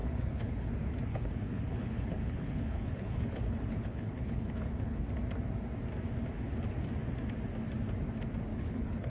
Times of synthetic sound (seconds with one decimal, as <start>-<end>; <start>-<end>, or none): 0.0-0.7; 1.1-5.1; 8.5-9.1